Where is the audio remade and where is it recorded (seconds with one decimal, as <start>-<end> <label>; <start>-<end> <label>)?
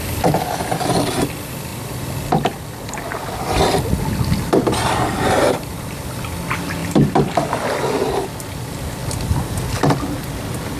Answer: 0.0-10.8 recorded